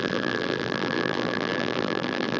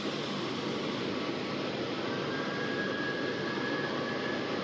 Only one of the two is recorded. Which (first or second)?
second